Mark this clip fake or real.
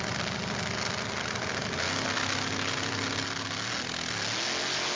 real